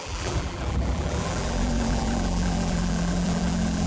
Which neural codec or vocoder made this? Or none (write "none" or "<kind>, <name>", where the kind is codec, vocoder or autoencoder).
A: vocoder, BigVGAN v2